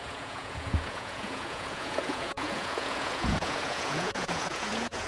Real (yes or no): no